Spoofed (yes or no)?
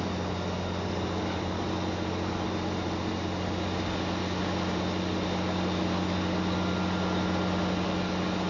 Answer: no